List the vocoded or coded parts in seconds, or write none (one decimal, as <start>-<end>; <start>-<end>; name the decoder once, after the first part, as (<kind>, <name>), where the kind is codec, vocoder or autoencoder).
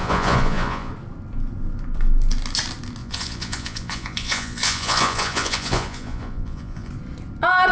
0.0-0.9 (vocoder, Vocos); 3.0-6.9